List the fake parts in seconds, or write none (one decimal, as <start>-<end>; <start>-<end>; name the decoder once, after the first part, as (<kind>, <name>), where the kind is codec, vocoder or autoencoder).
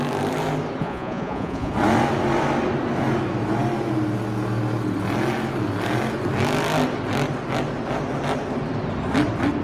0.8-1.7 (vocoder, Vocos)